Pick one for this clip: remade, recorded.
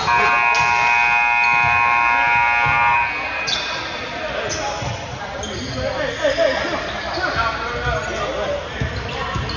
recorded